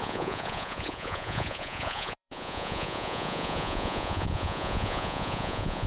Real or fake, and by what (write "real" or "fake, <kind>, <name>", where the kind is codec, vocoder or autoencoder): fake, vocoder, Vocos